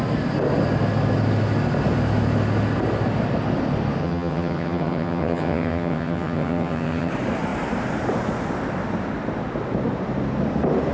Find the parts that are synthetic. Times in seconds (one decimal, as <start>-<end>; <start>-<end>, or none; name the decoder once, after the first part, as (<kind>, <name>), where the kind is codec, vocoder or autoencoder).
4.0-7.1 (vocoder, HiFi-GAN)